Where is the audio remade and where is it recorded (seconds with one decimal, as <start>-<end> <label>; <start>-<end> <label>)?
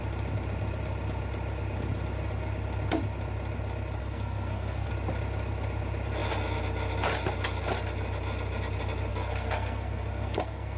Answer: 0.0-4.0 recorded; 4.0-4.9 remade; 4.9-9.1 recorded; 9.1-10.8 remade